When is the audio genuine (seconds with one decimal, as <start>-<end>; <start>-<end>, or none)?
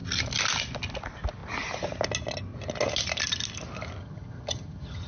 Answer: 0.0-4.0